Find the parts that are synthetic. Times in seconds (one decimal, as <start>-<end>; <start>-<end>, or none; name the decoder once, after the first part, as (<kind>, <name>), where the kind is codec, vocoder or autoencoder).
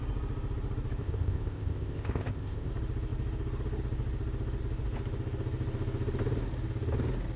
1.0-2.7 (codec, ZipCodec)